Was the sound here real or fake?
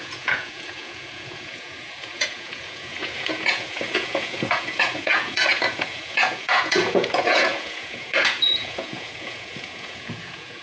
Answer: fake